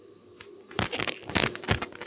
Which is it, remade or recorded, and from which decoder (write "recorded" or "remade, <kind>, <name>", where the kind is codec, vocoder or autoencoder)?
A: remade, vocoder, BigVGAN v2